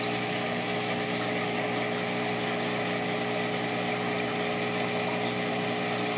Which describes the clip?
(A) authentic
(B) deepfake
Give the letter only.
A